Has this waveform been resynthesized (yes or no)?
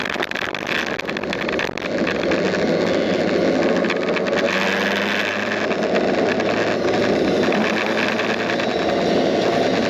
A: no